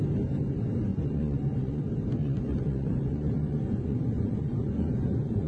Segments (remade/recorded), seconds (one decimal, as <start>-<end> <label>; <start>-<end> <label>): 0.0-0.9 recorded; 0.9-1.8 remade; 1.8-2.2 recorded; 2.2-5.5 remade